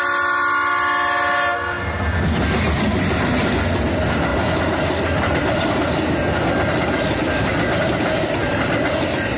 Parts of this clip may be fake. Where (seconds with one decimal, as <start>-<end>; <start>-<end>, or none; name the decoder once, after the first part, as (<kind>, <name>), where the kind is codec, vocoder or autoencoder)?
none